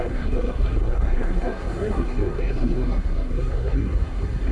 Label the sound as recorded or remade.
remade